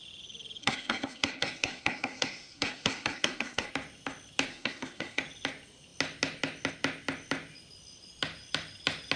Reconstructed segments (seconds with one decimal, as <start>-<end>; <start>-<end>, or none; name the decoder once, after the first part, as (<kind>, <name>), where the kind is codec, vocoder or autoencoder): 0.6-3.7 (codec, SNAC); 4.5-5.2